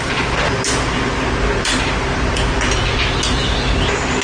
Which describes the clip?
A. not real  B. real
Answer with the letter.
B